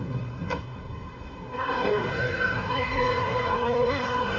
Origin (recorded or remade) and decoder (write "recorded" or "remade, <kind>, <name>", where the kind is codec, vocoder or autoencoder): remade, codec, SNAC